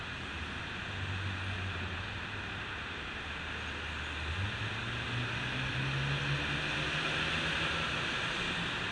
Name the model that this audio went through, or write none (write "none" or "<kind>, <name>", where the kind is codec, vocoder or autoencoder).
none